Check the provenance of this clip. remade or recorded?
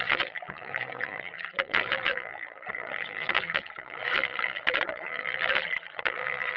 remade